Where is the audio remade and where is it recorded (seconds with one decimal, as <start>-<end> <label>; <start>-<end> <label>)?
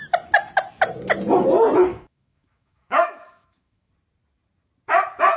0.0-1.9 recorded; 1.9-3.9 remade; 3.9-5.4 recorded